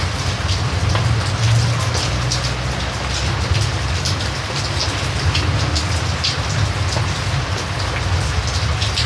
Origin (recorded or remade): recorded